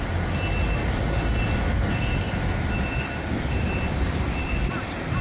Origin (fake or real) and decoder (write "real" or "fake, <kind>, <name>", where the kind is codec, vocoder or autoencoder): real